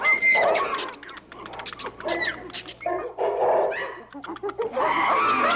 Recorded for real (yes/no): yes